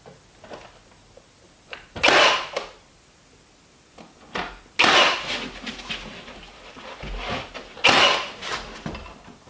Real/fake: real